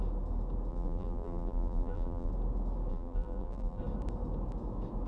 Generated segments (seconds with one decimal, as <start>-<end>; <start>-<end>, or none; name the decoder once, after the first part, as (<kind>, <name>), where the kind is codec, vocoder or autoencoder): 0.7-2.3 (vocoder, BigVGAN v2); 2.9-3.8